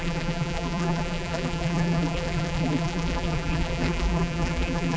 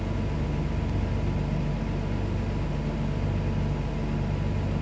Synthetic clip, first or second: first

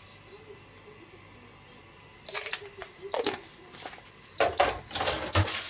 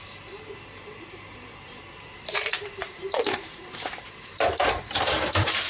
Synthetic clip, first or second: second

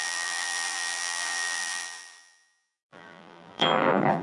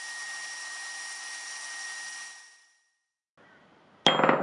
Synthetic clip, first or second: first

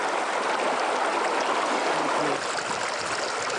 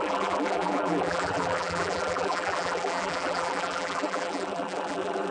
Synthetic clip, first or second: second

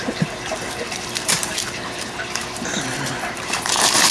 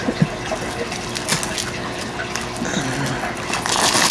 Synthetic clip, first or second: first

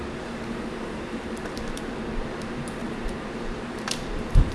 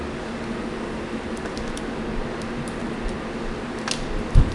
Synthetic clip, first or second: first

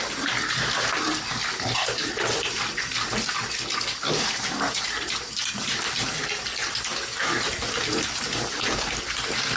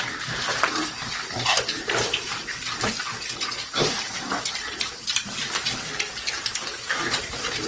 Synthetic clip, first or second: second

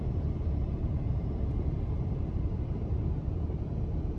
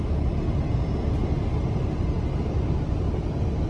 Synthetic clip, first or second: first